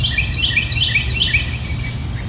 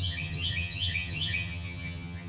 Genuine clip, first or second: first